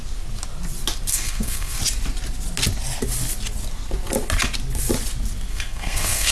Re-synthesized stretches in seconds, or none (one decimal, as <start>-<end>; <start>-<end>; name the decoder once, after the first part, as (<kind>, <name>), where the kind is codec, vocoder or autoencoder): 1.1-1.8 (codec, SNAC); 5.5-6.3